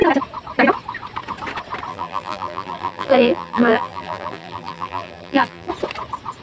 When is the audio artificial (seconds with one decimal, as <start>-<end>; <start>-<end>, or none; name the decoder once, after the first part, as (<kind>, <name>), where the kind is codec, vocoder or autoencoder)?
1.9-5.7 (vocoder, BigVGAN v2)